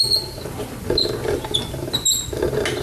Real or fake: real